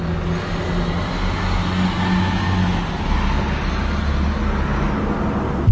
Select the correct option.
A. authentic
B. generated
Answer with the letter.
A